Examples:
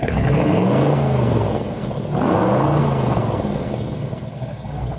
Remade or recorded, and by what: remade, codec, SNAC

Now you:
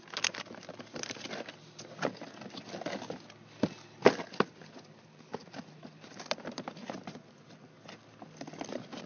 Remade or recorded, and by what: recorded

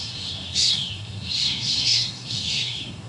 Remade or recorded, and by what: remade, codec, SNAC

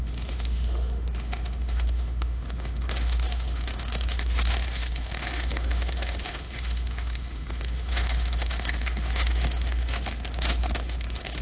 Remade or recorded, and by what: remade, autoencoder, DAC-VAE